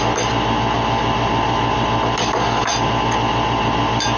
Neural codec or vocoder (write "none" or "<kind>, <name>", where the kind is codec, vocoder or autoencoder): none